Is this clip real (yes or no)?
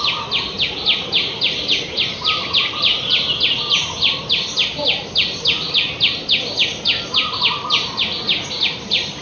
yes